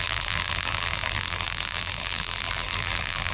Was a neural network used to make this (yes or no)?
yes